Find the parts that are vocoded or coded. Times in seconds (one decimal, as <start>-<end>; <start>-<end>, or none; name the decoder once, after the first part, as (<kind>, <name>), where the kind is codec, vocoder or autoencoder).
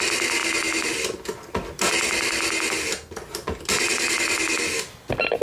none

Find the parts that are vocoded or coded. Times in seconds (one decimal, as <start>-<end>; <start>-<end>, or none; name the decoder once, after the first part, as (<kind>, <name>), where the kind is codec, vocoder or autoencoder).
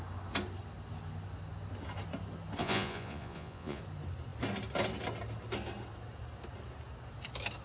2.6-3.8 (vocoder, Vocos)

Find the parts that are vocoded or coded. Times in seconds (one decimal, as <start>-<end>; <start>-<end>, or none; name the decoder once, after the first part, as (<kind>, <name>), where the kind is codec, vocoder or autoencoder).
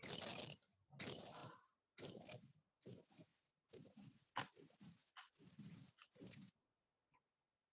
1.4-2.2 (vocoder, BigVGAN v2)